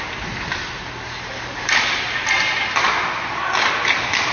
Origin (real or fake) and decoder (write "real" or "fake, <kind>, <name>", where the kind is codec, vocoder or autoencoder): real